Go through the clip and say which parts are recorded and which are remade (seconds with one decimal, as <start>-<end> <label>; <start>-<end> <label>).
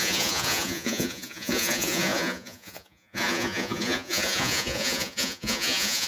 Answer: 0.0-6.1 remade